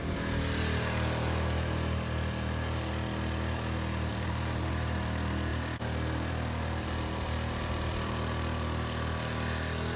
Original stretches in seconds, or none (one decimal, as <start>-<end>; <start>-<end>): 0.0-4.1; 4.7-10.0